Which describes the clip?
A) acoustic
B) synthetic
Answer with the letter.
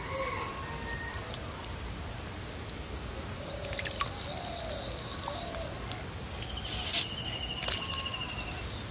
A